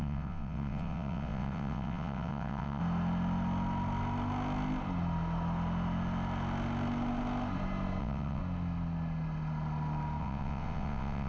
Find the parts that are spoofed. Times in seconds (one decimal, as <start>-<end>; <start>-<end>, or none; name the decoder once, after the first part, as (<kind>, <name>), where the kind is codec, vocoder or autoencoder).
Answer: 0.0-2.8 (vocoder, WaveNeXt); 8.0-8.4; 10.2-11.3